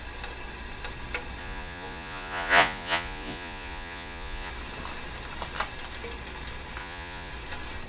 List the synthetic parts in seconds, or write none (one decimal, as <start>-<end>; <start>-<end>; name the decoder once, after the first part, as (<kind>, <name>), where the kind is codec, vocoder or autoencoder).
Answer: 1.4-4.5 (vocoder, Vocos); 6.8-7.3